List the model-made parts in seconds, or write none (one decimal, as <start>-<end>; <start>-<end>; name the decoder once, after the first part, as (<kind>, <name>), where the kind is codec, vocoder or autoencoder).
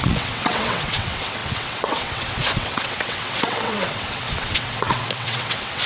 0.0-5.9 (vocoder, WaveNeXt)